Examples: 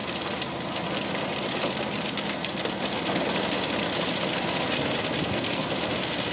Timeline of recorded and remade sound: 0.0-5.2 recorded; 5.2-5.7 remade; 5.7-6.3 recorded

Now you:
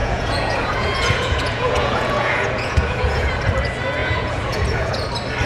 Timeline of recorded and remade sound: 0.0-3.3 remade; 3.3-4.0 recorded; 4.0-5.1 remade; 5.1-5.5 recorded

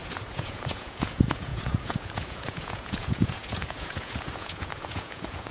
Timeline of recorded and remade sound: 0.0-5.5 remade